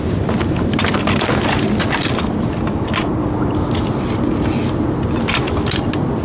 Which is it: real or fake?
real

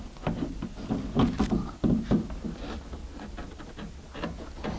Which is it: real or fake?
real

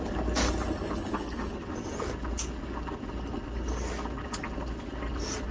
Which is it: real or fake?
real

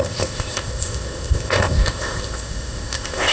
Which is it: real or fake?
fake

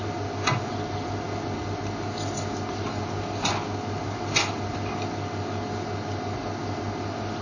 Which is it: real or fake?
real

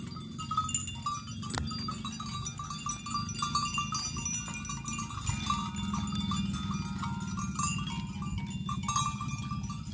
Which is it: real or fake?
real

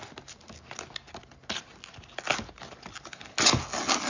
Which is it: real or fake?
real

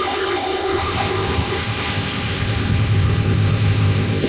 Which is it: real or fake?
fake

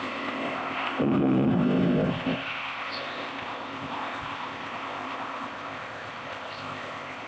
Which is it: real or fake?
fake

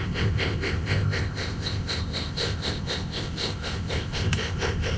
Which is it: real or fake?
fake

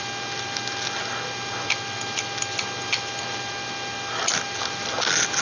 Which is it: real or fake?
real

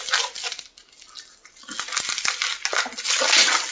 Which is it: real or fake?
real